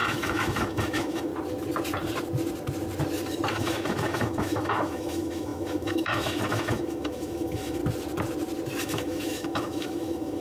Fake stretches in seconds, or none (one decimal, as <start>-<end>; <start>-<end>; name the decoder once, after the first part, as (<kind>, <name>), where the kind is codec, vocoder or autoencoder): 0.0-1.3 (autoencoder, DAC-VAE); 3.5-7.8; 8.8-10.4